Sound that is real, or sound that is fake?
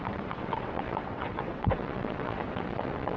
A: fake